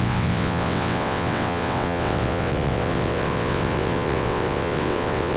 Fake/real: fake